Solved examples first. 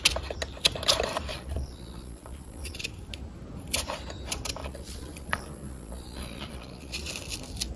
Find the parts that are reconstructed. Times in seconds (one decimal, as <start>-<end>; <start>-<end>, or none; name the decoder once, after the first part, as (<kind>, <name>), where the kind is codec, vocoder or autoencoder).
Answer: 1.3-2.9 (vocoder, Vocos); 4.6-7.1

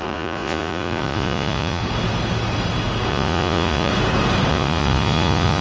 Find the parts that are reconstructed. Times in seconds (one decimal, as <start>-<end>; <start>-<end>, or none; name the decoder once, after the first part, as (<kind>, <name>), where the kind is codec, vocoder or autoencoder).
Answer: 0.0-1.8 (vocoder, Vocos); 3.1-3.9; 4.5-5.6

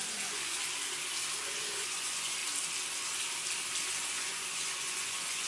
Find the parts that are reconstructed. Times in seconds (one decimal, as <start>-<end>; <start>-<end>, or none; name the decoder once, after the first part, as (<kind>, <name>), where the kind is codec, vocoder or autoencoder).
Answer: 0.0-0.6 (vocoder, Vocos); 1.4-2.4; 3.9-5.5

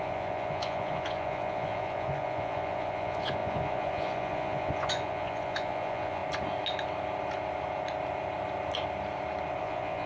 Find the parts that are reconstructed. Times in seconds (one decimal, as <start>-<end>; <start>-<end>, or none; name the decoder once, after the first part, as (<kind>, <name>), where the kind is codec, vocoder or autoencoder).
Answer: 0.0-6.2 (vocoder, Vocos); 9.6-10.1